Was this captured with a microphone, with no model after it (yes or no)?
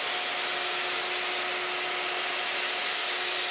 yes